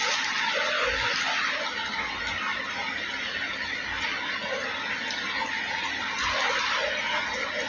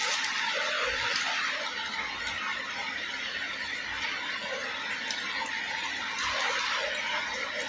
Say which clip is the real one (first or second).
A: first